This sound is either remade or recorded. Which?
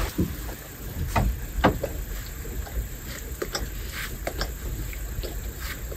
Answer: recorded